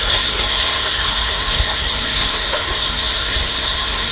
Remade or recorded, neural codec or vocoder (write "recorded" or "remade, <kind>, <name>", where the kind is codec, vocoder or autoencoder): remade, codec, SNAC